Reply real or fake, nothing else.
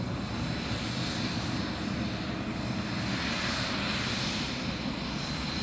real